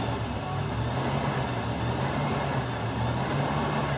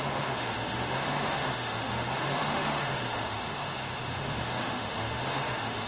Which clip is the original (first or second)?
first